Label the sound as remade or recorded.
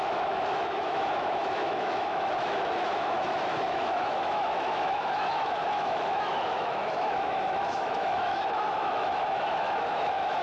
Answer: remade